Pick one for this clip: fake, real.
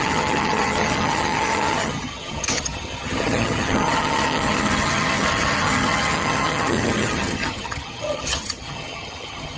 fake